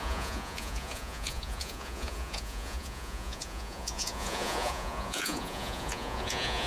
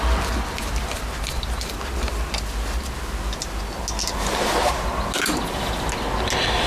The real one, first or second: second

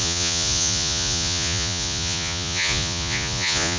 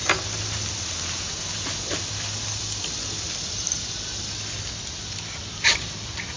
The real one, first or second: second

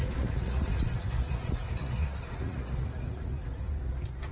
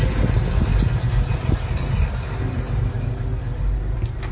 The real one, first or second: second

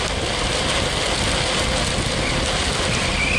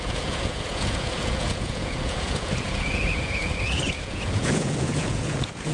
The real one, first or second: first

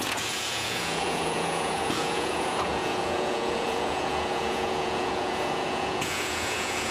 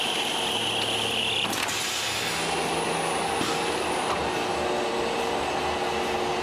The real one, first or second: second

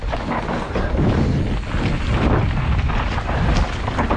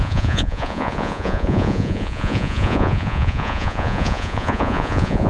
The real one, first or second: first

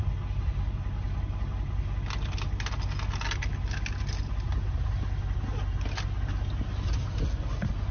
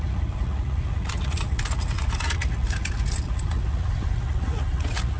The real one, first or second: first